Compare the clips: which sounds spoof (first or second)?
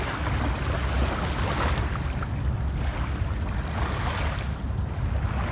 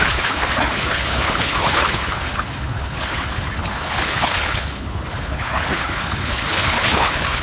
second